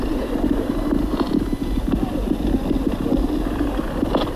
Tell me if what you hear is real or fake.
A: real